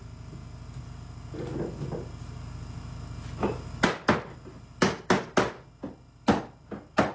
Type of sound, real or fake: real